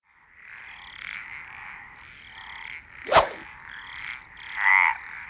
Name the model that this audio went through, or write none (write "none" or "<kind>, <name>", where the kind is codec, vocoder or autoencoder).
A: none